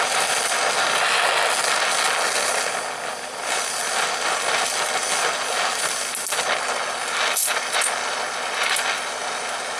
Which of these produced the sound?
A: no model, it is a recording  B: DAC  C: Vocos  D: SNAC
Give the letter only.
A